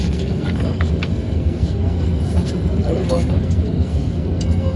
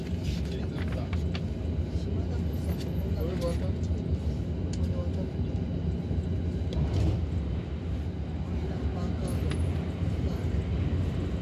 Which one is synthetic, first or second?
first